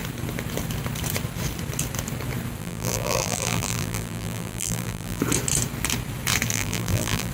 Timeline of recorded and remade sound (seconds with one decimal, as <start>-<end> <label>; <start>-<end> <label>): 0.0-2.6 recorded; 2.6-5.2 remade; 5.2-6.5 recorded; 6.5-7.3 remade